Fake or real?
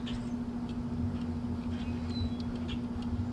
real